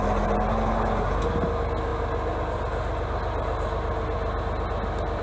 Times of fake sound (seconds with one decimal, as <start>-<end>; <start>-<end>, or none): none